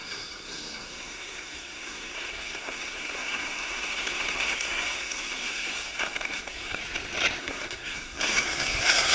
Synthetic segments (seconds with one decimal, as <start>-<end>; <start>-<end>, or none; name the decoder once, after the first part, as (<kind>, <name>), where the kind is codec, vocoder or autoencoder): 0.0-6.8 (codec, SNAC); 7.4-9.1